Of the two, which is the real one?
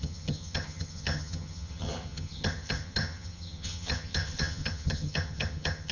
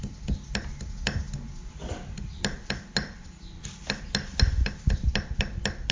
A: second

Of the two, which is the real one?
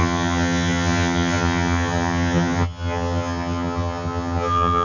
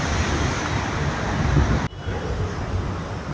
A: second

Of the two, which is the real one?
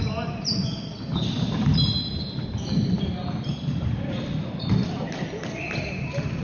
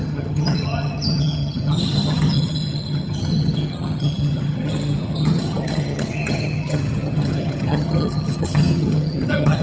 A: first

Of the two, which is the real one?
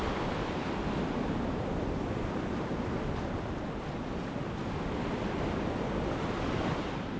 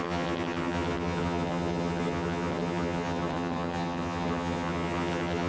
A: first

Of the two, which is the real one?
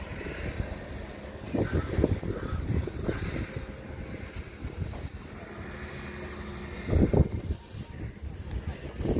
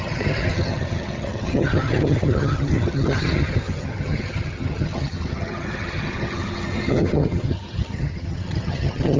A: first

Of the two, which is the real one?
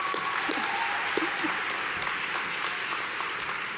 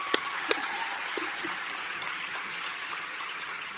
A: first